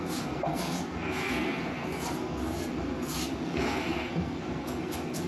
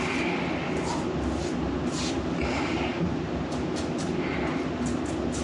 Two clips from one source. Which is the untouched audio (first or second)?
second